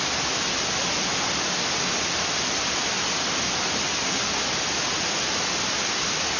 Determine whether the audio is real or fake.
real